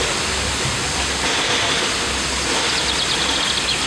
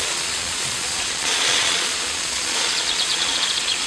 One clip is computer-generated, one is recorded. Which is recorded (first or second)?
first